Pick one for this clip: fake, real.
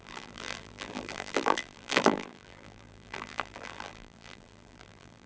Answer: fake